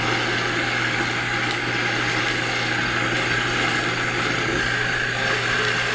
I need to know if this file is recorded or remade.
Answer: recorded